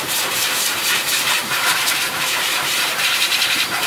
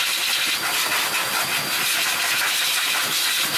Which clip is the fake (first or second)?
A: first